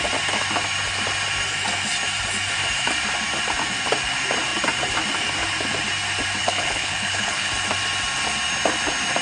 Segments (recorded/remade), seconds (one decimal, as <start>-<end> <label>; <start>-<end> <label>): 0.0-6.4 recorded; 6.4-7.5 remade; 7.5-9.2 recorded